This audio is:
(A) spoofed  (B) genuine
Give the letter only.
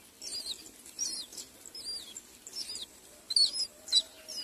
B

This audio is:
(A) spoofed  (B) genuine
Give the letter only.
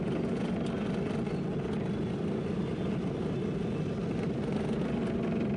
B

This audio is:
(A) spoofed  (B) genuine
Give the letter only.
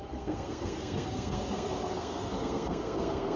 A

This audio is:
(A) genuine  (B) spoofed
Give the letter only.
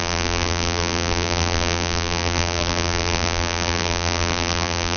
B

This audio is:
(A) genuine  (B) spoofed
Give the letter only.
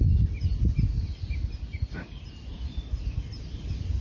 A